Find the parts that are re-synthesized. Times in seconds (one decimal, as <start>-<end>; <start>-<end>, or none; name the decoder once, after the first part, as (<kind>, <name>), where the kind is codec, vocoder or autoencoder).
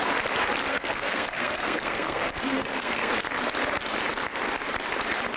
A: 0.7-3.1 (codec, SNAC)